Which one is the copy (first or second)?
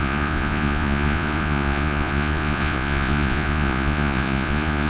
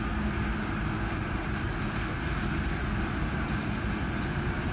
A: first